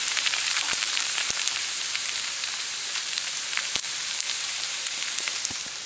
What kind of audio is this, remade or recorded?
remade